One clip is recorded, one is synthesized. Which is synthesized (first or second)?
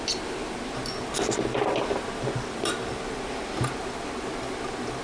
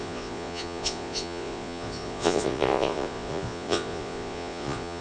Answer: second